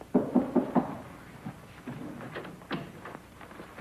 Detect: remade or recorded recorded